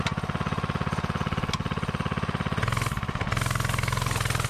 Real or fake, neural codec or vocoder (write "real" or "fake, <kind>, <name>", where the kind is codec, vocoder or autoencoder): real